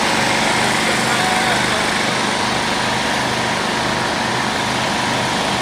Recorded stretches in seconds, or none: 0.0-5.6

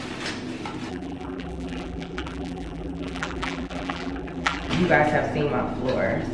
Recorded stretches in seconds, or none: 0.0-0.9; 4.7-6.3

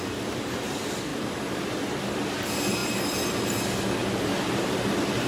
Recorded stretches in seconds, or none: 0.0-1.1; 1.8-2.8; 3.6-4.0

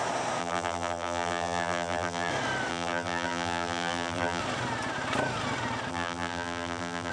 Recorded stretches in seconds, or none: 0.0-0.4; 2.3-2.7; 4.4-5.9

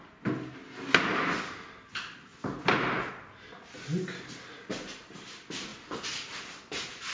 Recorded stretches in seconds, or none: 0.0-7.1

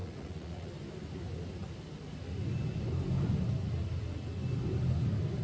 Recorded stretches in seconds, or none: 0.7-5.4

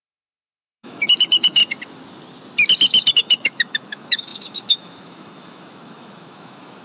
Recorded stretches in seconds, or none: 1.6-3.1